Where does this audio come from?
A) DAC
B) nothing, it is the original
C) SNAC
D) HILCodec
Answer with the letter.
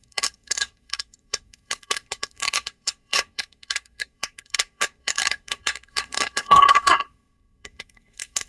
C